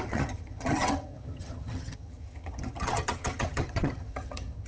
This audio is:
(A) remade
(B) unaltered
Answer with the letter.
A